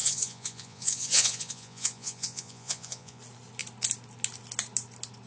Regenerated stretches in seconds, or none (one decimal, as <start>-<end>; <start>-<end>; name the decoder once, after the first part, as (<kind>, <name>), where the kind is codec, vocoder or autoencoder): 0.0-3.2 (vocoder, Vocos)